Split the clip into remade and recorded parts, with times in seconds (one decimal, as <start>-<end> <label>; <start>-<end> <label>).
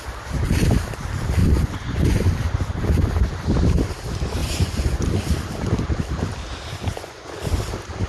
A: 0.0-1.4 recorded; 1.4-2.3 remade; 2.3-4.4 recorded; 4.4-5.0 remade; 5.0-6.9 recorded; 6.9-7.4 remade; 7.4-8.1 recorded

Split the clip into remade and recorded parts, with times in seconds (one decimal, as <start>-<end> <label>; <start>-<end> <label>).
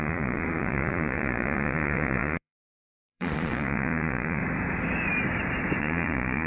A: 0.0-4.4 remade; 4.4-5.8 recorded; 5.8-6.5 remade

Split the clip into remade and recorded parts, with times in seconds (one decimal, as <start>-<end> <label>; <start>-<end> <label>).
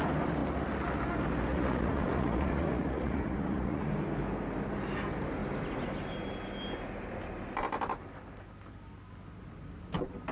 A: 0.0-1.5 recorded; 1.5-3.9 remade; 3.9-10.3 recorded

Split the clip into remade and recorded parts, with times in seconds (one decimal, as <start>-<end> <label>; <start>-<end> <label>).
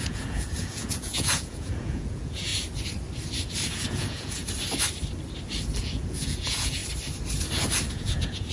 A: 0.0-2.5 remade; 2.5-3.7 recorded; 3.7-4.4 remade; 4.4-5.8 recorded; 5.8-6.8 remade; 6.8-7.9 recorded; 7.9-8.5 remade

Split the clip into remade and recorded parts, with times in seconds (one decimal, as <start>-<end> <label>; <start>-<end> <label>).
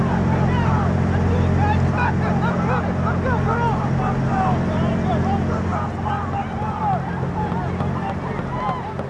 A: 0.0-9.1 recorded